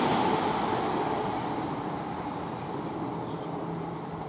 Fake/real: real